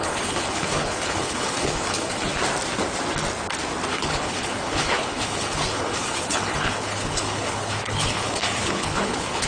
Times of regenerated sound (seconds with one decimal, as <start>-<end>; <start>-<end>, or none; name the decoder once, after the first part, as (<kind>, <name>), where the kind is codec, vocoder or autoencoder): 0.0-2.3 (codec, HILCodec); 3.9-9.5